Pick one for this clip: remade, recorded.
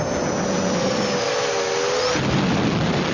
recorded